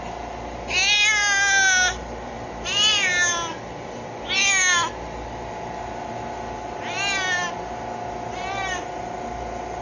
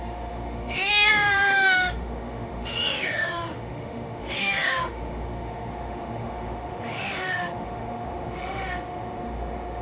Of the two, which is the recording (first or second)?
first